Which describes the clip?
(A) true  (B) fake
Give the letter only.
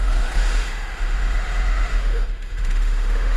B